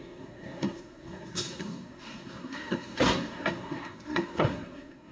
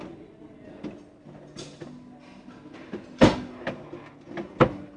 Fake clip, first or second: first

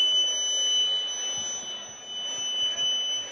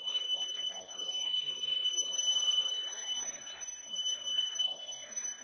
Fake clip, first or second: second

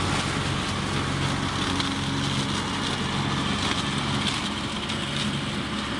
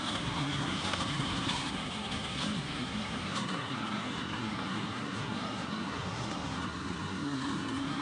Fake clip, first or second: second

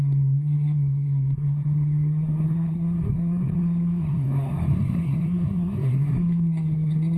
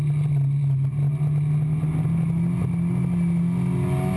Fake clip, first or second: first